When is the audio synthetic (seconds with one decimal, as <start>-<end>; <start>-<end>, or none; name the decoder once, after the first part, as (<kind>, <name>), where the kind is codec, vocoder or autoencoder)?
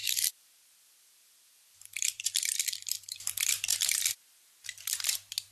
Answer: 0.0-3.3 (vocoder, BigVGAN v2); 3.7-4.4